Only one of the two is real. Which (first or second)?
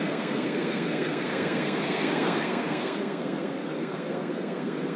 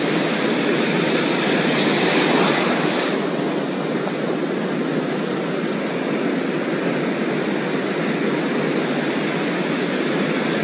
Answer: second